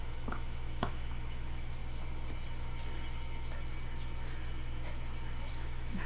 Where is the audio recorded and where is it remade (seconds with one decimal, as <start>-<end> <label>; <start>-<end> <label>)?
0.0-1.8 remade; 1.8-5.5 recorded; 5.5-6.1 remade